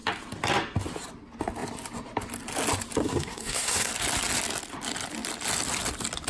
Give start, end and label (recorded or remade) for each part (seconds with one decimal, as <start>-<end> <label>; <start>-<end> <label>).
0.0-3.0 recorded; 3.0-3.9 remade; 3.9-6.3 recorded